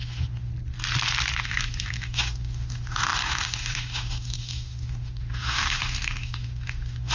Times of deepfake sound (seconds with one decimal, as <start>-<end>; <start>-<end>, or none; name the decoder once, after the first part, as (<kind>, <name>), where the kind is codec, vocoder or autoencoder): 0.0-0.5 (autoencoder, DAC-VAE); 1.4-7.1